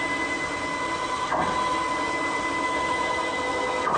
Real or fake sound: real